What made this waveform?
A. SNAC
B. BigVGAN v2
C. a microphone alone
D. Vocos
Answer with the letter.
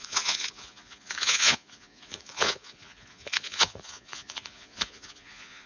D